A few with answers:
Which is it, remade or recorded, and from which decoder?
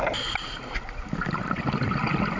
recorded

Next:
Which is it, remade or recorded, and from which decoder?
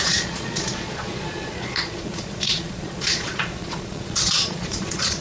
remade, vocoder, Vocos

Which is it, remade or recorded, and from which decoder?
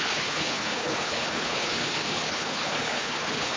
remade, codec, HILCodec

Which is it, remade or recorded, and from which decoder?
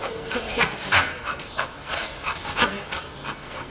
remade, codec, SNAC